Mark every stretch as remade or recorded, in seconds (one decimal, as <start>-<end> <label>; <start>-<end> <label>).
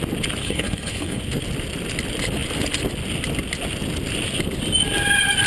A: 0.0-0.4 recorded; 0.4-1.2 remade; 1.2-5.5 recorded